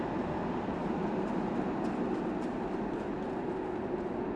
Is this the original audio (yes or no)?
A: yes